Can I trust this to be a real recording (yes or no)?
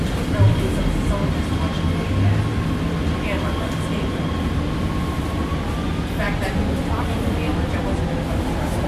yes